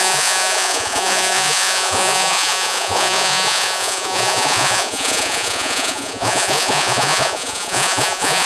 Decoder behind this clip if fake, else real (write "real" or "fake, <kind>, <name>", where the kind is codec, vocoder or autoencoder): fake, vocoder, Vocos